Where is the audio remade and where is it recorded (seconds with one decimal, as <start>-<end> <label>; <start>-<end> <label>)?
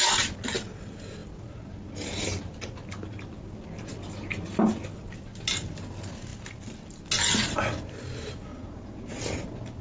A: 0.0-8.5 recorded; 8.5-9.2 remade; 9.2-9.8 recorded